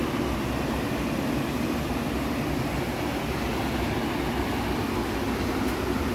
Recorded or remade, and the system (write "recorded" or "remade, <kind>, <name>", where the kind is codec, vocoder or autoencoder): recorded